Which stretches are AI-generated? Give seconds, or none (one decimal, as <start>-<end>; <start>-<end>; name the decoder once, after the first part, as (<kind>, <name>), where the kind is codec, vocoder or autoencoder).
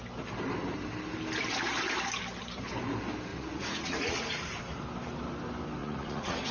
3.3-4.6 (vocoder, Vocos); 5.8-6.5